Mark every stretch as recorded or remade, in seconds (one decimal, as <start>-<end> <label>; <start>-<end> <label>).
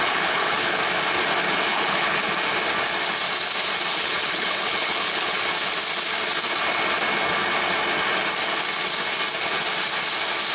0.0-0.8 remade; 0.8-1.6 recorded; 1.6-2.2 remade; 2.2-3.9 recorded; 3.9-5.4 remade; 5.4-10.5 recorded